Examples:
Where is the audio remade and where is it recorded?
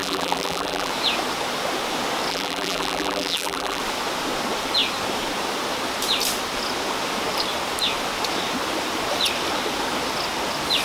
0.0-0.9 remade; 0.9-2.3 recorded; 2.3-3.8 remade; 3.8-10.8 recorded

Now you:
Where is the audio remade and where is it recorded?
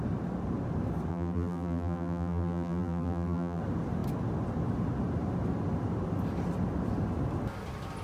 0.0-1.1 recorded; 1.1-3.6 remade; 3.6-8.0 recorded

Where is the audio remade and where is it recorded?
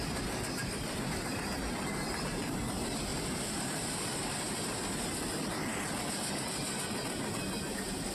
0.0-0.6 recorded; 0.6-1.5 remade; 1.5-3.1 recorded; 3.1-3.7 remade; 3.7-5.7 recorded; 5.7-6.2 remade; 6.2-8.1 recorded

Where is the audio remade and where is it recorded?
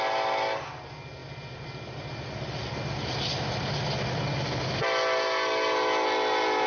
0.0-6.7 recorded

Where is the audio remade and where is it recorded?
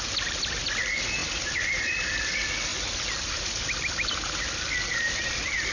0.0-1.2 recorded; 1.2-2.2 remade; 2.2-5.7 recorded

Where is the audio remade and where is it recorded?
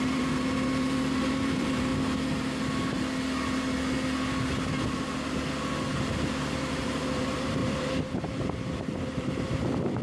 0.0-1.9 remade; 1.9-6.6 recorded; 6.6-10.0 remade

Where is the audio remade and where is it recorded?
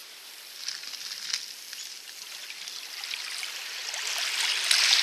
0.0-0.7 remade; 0.7-5.0 recorded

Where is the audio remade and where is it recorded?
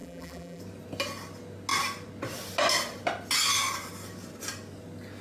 0.0-0.6 remade; 0.6-5.2 recorded